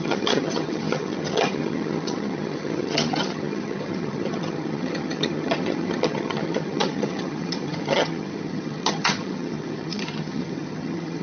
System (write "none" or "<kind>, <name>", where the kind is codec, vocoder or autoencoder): vocoder, HiFi-GAN